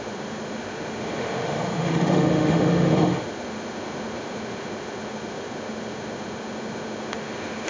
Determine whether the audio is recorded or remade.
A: remade